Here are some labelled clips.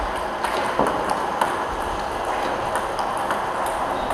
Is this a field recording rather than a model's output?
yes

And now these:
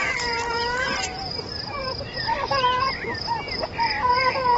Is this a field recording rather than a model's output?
yes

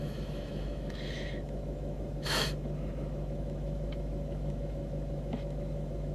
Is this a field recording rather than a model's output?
no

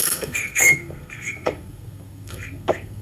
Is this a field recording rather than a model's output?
no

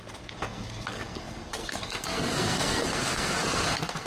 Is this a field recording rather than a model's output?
no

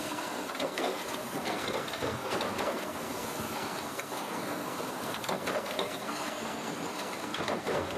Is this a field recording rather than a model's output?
no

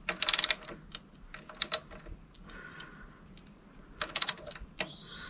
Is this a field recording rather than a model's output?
yes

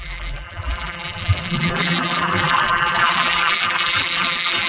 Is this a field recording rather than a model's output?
no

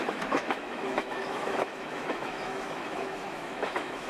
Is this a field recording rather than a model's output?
no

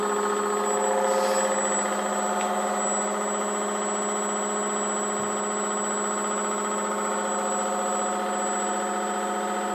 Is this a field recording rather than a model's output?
yes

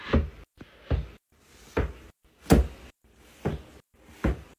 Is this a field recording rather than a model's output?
yes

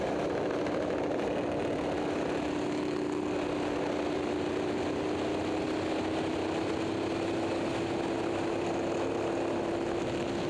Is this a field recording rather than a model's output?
yes